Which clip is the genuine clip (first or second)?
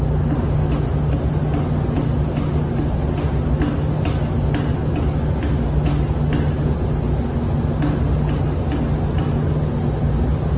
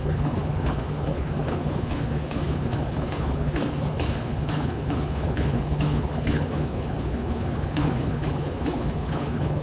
first